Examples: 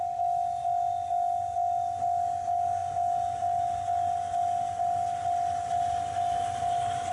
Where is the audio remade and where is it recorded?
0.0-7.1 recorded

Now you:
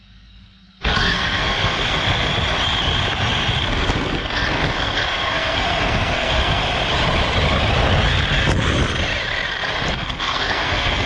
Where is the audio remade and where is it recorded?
0.0-2.3 remade; 2.3-3.6 recorded; 3.6-6.6 remade; 6.6-9.9 recorded; 9.9-11.1 remade

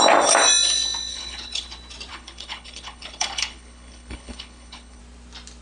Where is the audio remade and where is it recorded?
0.0-1.1 recorded; 1.1-1.7 remade; 1.7-2.1 recorded; 2.1-5.0 remade; 5.0-5.6 recorded

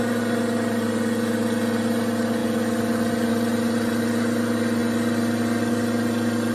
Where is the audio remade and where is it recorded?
0.0-6.5 recorded

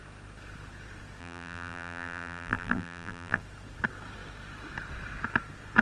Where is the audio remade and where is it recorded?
0.0-1.2 recorded; 1.2-3.4 remade; 3.4-5.8 recorded

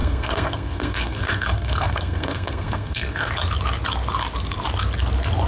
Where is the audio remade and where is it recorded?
0.0-3.3 remade; 3.3-5.5 recorded

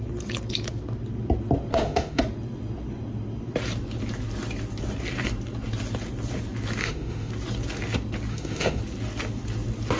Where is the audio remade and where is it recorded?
0.0-1.7 recorded; 1.7-2.2 remade; 2.2-6.8 recorded; 6.8-7.3 remade; 7.3-8.3 recorded; 8.3-8.8 remade; 8.8-10.0 recorded

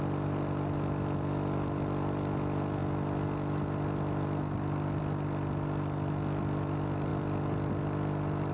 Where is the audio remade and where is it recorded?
0.0-8.5 recorded